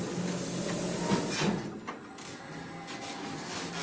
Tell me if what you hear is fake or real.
real